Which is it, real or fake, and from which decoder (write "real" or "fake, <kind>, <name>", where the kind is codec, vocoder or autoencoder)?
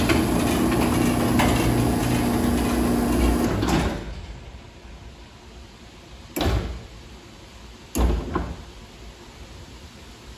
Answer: real